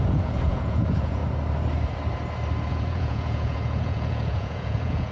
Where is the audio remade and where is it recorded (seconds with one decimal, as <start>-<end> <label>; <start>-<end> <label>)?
0.0-1.2 remade; 1.2-2.7 recorded; 2.7-5.1 remade